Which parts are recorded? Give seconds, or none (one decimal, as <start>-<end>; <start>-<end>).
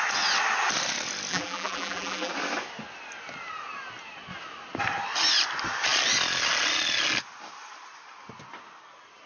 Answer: 0.0-1.3; 2.3-9.3